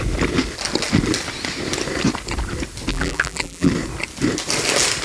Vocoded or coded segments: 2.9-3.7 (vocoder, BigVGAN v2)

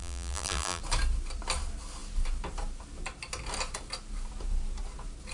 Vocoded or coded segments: 0.0-0.8 (vocoder, BigVGAN v2)

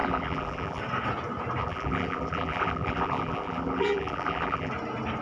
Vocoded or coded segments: 0.0-0.8 (vocoder, BigVGAN v2); 1.6-4.7

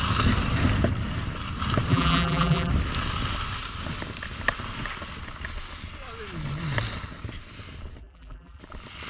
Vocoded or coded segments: 1.9-2.7 (vocoder, BigVGAN v2); 8.0-8.6

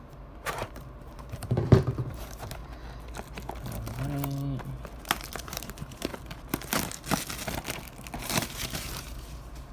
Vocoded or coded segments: 0.0-2.6 (vocoder, BigVGAN v2); 5.0-6.1; 8.2-9.7

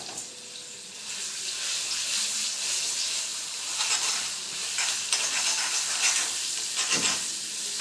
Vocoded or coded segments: 0.0-7.8 (vocoder, BigVGAN v2)

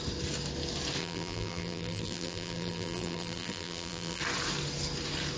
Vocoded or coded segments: 1.0-4.2 (vocoder, BigVGAN v2)